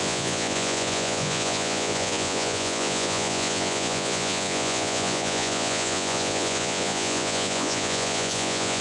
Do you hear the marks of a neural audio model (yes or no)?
yes